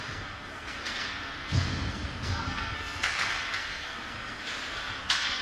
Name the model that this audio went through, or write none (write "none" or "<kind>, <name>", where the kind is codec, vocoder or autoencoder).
codec, SNAC